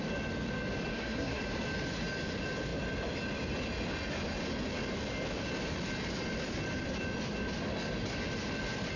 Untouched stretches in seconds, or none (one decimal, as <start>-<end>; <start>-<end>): 0.0-0.9; 1.4-9.0